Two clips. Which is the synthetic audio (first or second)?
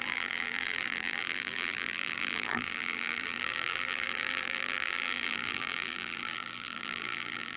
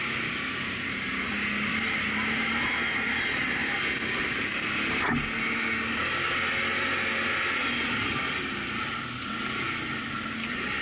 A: first